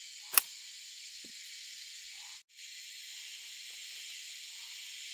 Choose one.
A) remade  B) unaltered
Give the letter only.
B